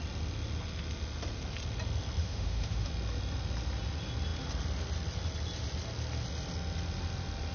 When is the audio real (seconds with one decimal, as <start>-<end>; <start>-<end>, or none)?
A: 0.0-2.2; 2.9-7.5